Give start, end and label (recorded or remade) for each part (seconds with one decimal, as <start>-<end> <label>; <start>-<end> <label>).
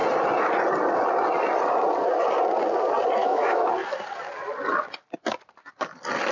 0.0-3.2 recorded; 3.2-3.7 remade; 3.7-6.3 recorded